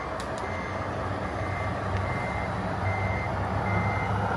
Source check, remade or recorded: recorded